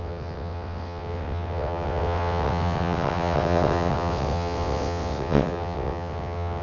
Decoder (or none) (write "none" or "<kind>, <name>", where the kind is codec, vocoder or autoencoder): vocoder, WaveNeXt